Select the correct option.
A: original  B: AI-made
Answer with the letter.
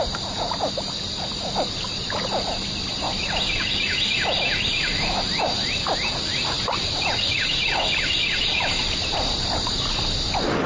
A